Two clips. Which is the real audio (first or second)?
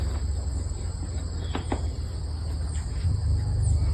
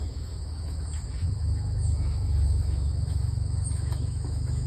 first